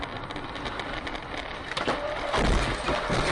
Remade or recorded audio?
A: recorded